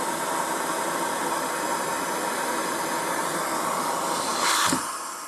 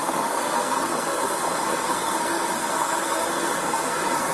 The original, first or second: first